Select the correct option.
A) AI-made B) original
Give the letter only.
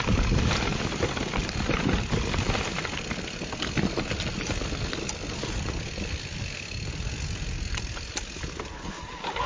B